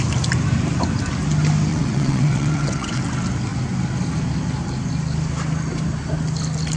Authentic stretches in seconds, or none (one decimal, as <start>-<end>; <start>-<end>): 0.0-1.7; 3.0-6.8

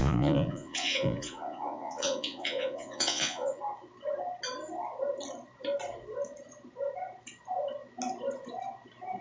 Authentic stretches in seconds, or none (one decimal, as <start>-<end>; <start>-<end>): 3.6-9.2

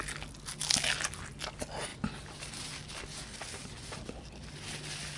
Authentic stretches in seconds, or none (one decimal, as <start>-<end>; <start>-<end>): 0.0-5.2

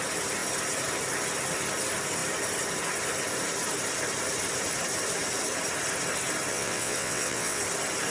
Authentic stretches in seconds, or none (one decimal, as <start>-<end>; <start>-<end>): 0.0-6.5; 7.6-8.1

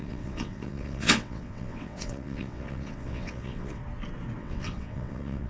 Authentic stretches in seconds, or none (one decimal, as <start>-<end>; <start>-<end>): 3.8-4.4

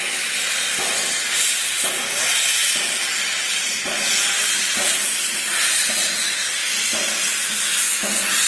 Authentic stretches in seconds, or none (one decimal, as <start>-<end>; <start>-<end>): 0.0-8.5

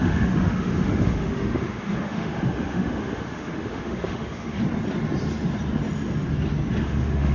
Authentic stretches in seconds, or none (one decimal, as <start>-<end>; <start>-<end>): 4.6-6.8

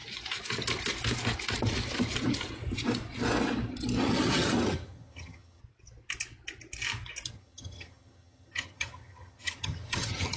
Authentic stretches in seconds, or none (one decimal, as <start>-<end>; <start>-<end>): 0.0-4.1; 5.6-7.3